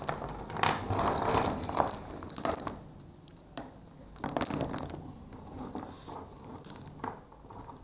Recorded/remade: recorded